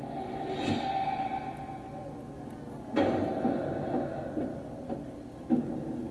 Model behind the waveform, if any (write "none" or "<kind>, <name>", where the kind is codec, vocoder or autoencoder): none